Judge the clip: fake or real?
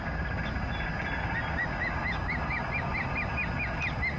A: real